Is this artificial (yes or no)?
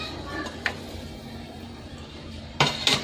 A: yes